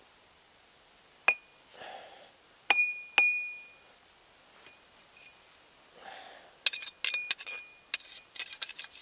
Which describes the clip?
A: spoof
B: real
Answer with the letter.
B